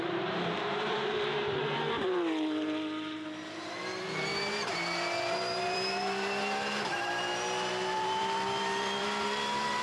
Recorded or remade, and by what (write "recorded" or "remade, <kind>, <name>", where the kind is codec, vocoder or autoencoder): remade, vocoder, BigVGAN v2